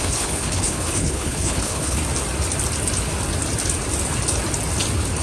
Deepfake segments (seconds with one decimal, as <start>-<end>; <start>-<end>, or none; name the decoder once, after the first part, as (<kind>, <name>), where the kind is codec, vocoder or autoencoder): 0.0-2.0 (codec, HILCodec)